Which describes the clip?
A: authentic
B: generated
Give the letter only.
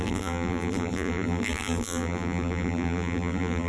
B